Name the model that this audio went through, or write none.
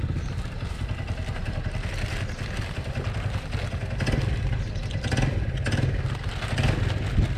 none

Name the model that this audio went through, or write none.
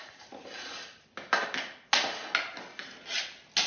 none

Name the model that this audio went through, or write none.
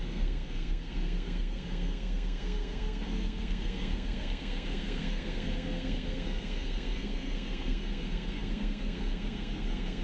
codec, SNAC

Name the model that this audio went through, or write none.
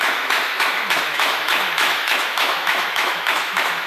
autoencoder, DAC-VAE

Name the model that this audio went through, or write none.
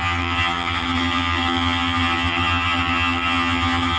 vocoder, HiFi-GAN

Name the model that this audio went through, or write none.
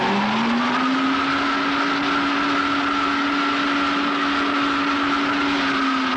none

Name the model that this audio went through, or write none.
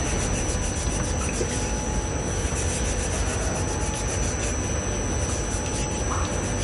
none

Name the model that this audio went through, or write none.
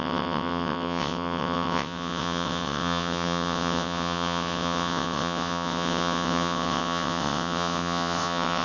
vocoder, WaveNeXt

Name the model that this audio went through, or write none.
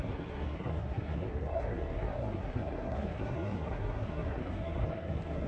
codec, SNAC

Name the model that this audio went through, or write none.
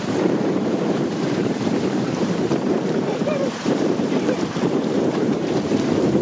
vocoder, BigVGAN v2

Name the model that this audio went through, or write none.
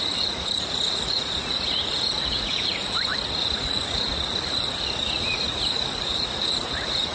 vocoder, Vocos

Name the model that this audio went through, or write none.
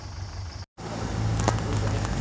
none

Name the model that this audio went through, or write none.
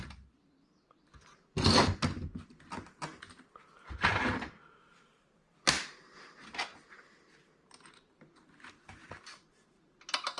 none